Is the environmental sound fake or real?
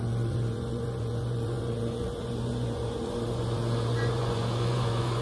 fake